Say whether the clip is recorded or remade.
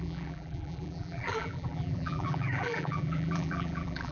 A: remade